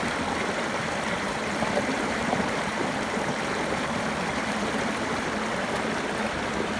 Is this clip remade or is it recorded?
remade